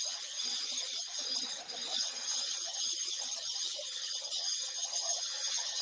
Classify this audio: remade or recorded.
remade